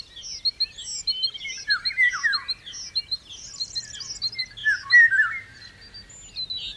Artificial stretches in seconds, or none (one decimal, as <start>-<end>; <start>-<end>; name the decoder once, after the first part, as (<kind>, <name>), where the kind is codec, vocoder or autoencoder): none